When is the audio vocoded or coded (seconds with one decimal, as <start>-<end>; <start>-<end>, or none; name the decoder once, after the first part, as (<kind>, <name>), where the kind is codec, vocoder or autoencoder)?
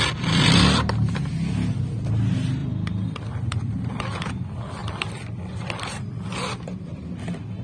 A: 2.6-4.3 (vocoder, BigVGAN v2); 4.8-7.1